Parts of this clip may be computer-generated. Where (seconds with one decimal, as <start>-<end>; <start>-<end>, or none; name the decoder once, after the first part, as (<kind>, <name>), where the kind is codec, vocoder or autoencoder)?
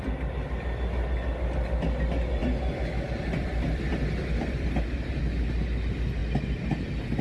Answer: 2.4-5.2 (vocoder, BigVGAN v2)